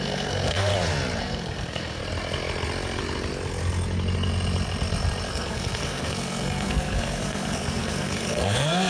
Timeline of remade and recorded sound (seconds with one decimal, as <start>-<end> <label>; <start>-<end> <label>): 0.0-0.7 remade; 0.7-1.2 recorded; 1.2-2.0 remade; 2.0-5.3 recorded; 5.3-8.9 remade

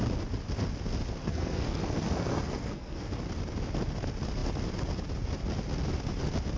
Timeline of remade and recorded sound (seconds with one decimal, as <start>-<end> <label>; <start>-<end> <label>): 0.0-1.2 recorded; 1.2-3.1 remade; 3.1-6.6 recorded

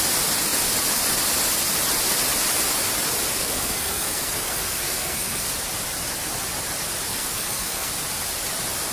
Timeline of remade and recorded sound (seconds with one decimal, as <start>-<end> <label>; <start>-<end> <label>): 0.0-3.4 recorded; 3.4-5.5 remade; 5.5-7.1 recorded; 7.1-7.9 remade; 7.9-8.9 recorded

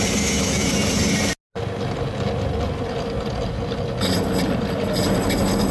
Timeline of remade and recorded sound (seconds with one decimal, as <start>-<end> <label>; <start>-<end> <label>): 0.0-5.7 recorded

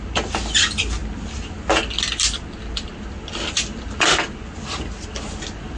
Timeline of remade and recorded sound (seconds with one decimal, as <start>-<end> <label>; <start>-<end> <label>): 0.0-5.8 recorded

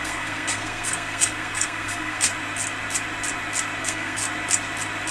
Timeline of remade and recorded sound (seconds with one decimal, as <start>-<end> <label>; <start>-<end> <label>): 0.0-2.3 remade; 2.3-3.8 recorded; 3.8-4.2 remade; 4.2-5.1 recorded

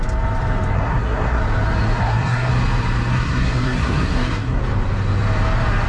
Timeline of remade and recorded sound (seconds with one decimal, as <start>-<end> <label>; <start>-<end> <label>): 0.0-0.7 recorded; 0.7-1.4 remade; 1.4-2.0 recorded; 2.0-2.5 remade; 2.5-3.1 recorded; 3.1-4.6 remade; 4.6-5.9 recorded

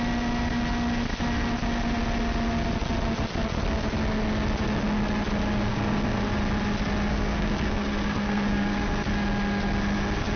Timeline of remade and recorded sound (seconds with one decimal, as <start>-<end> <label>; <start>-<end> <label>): 0.0-5.7 recorded; 5.7-6.3 remade; 6.3-7.1 recorded; 7.1-8.8 remade; 8.8-10.4 recorded